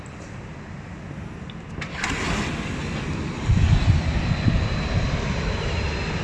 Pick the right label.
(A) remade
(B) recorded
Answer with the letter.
B